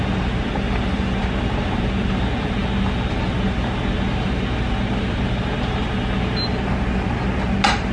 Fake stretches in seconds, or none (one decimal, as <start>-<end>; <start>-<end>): none

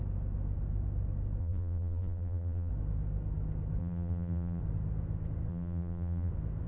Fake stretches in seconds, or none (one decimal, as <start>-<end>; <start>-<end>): 1.4-2.7; 3.8-4.6; 5.5-6.3

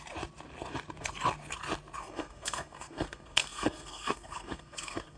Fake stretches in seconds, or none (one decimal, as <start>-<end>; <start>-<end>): 2.0-5.2

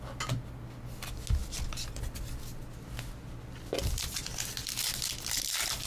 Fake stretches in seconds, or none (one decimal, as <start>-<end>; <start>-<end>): none

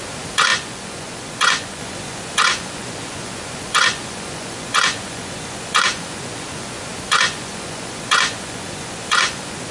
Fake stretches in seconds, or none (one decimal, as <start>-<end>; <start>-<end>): 0.0-9.7

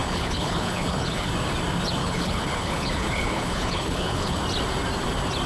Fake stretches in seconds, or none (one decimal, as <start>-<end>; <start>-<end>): 0.0-1.3; 2.0-4.4

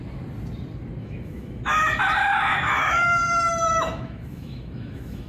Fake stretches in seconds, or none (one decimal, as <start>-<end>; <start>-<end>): 1.0-1.6; 2.5-5.3

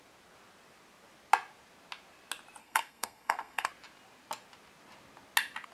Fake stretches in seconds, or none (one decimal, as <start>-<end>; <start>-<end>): 2.6-3.7